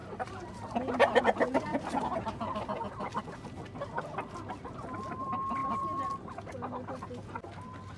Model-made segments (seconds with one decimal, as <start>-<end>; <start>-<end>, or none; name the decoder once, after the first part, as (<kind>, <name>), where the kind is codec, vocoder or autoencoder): 0.0-1.2 (vocoder, BigVGAN v2)